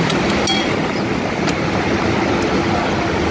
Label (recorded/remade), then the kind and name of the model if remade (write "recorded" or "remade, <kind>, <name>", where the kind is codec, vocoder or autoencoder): recorded